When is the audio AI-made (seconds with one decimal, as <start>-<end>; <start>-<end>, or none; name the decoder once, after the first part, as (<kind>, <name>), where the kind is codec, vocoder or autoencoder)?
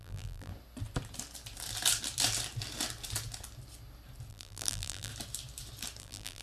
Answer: 0.0-0.5 (vocoder, BigVGAN v2); 4.3-5.1; 6.0-6.4